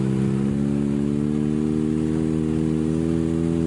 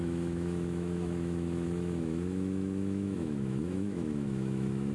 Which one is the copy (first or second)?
second